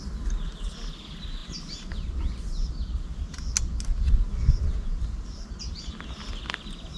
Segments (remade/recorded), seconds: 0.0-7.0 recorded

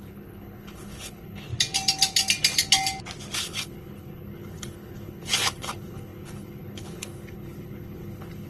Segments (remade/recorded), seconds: 0.0-1.5 remade; 1.5-3.4 recorded; 3.4-8.5 remade